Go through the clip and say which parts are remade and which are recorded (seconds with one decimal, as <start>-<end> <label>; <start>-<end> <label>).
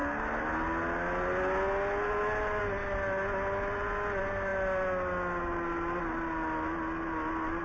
0.0-7.6 recorded